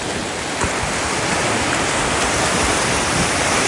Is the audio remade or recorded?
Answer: recorded